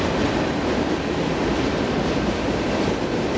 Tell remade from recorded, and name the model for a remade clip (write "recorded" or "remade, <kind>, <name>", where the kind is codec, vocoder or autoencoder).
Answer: recorded